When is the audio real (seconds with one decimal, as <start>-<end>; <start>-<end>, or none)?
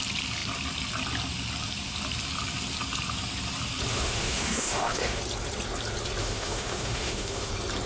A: 0.0-3.9; 5.2-6.2; 7.5-7.9